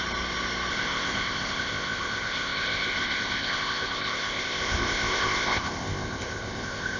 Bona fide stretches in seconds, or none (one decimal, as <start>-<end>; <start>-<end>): 0.0-0.7